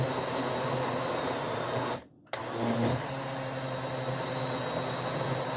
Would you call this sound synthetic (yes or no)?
no